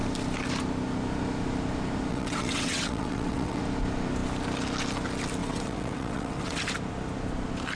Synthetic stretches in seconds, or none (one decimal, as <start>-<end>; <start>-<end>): 2.1-3.6; 5.4-6.6